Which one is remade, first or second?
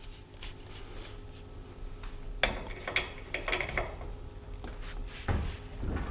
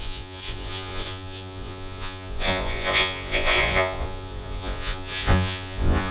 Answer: second